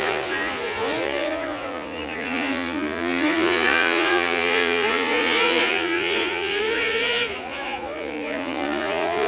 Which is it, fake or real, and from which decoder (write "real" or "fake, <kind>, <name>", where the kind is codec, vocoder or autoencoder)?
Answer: fake, vocoder, Vocos